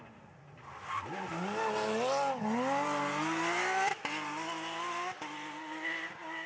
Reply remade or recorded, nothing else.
recorded